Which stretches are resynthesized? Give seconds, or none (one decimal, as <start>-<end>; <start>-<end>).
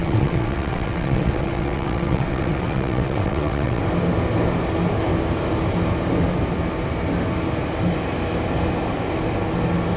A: 0.0-3.8